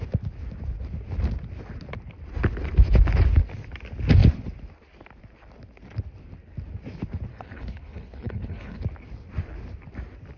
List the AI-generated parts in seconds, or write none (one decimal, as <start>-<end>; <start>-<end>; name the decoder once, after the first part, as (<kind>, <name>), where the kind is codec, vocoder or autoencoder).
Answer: 7.3-8.8 (codec, HILCodec)